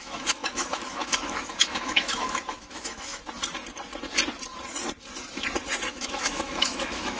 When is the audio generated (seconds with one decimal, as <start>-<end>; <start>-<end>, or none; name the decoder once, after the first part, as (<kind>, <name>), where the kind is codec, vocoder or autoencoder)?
0.0-3.2 (autoencoder, DAC-VAE); 5.9-7.2